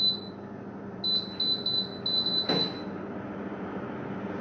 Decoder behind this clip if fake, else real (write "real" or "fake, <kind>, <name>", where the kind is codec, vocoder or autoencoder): real